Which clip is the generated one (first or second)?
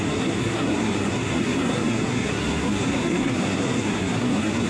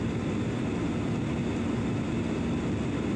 first